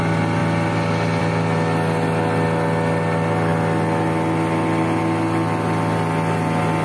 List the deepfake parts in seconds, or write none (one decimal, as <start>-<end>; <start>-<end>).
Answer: none